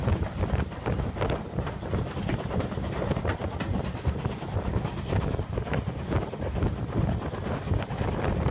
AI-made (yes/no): no